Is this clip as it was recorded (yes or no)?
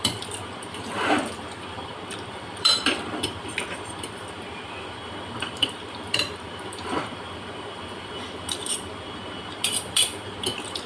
no